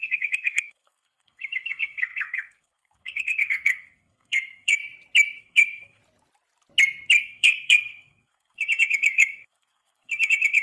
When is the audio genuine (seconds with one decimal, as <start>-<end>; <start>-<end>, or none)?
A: 4.8-5.4; 6.0-7.2